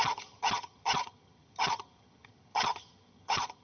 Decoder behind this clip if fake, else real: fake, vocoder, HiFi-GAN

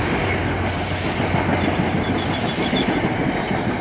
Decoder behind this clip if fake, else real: real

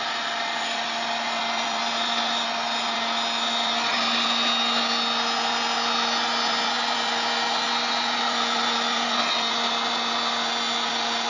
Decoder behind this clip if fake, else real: real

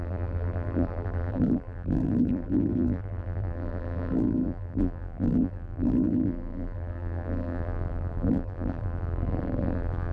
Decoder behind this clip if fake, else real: fake, vocoder, BigVGAN v2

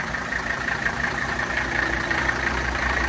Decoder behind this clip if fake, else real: fake, vocoder, BigVGAN v2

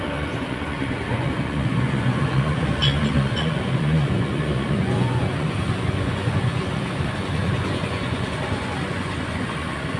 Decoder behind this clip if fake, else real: fake, vocoder, Vocos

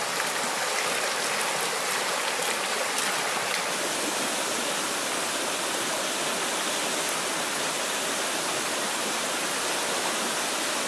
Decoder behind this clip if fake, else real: real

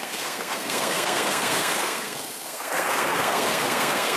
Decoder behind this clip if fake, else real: fake, codec, SNAC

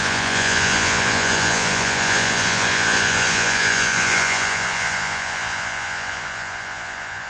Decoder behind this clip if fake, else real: fake, vocoder, Vocos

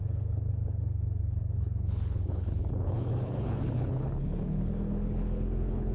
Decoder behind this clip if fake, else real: fake, codec, HILCodec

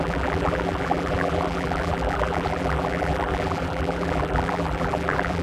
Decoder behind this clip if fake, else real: fake, vocoder, BigVGAN v2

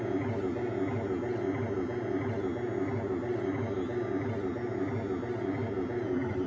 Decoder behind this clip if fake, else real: real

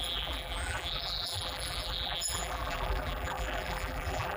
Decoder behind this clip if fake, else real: fake, vocoder, BigVGAN v2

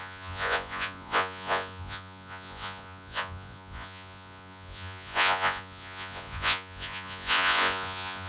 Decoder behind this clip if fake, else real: fake, vocoder, Vocos